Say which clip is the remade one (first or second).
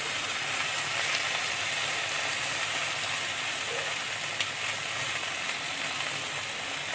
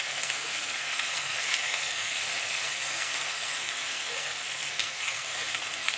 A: second